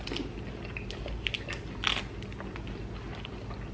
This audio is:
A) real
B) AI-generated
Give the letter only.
A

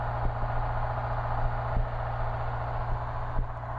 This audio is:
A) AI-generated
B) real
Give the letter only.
B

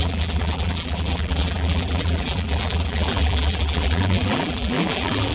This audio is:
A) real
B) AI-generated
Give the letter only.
B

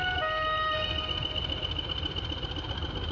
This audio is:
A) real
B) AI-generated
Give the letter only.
A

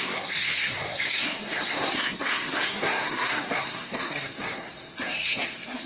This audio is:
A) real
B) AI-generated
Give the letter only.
B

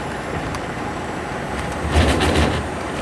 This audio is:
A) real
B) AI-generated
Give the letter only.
B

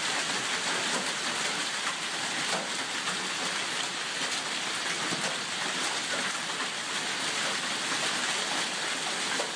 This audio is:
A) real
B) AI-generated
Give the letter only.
A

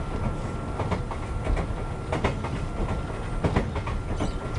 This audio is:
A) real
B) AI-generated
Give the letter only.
A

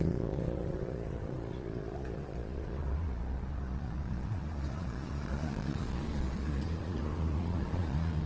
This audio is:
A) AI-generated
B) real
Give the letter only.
A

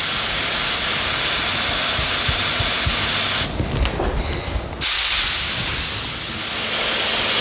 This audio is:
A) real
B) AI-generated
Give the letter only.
A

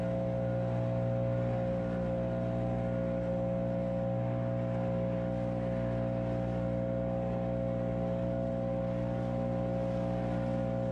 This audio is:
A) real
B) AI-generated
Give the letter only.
A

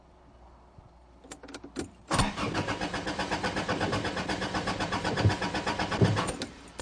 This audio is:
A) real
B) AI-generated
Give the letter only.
A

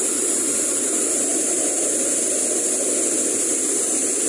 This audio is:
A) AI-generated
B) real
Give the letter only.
B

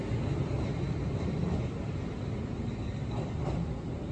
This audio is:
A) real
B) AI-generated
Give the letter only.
A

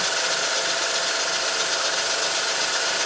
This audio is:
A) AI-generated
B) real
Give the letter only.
B